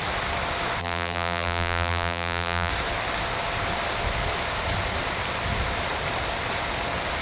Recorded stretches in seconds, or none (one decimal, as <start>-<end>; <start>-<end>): 0.0-0.8; 2.7-7.2

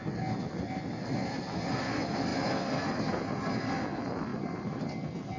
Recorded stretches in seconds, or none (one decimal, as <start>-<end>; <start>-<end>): 0.0-4.3; 4.8-5.4